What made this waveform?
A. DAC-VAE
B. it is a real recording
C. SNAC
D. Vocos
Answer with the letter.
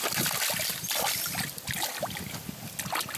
B